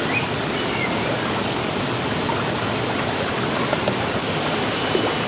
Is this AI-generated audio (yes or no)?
no